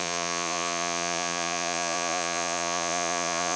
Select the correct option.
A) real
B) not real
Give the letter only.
B